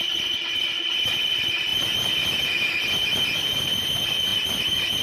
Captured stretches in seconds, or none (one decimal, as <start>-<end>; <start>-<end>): 0.0-5.0

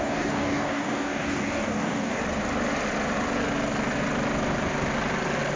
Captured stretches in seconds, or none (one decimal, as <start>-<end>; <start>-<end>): 2.2-5.6

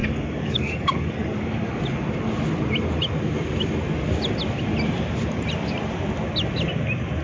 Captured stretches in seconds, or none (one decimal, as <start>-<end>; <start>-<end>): 1.8-7.2

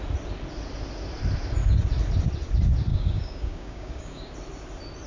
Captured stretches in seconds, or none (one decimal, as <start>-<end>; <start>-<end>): 0.0-2.9; 4.3-5.1

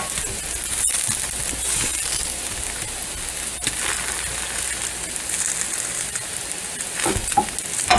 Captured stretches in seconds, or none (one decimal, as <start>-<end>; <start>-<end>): 0.0-8.0

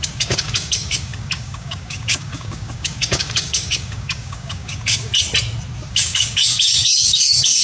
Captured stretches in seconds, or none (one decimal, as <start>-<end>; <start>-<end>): 5.1-5.9

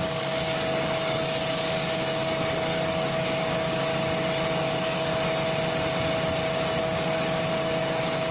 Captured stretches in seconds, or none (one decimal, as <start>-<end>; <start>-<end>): 3.9-4.6; 5.1-6.8

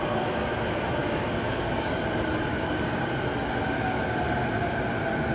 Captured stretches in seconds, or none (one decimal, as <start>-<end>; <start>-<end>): 0.0-1.0; 2.1-2.5; 3.0-5.3